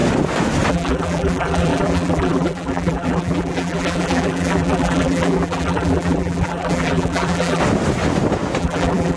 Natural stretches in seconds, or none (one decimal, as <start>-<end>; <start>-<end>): 0.0-0.7; 7.6-8.6